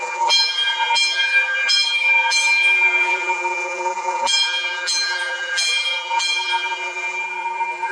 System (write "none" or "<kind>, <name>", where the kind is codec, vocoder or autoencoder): vocoder, BigVGAN v2